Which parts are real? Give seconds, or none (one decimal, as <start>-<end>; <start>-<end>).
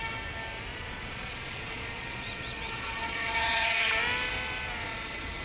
0.0-0.7; 3.9-4.9